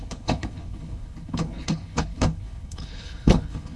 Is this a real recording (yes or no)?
no